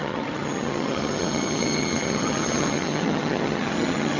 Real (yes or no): no